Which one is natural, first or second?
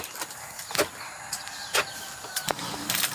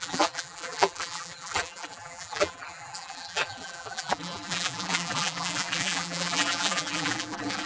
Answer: first